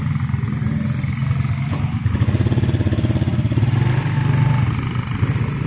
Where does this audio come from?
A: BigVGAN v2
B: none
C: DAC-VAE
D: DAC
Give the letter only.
B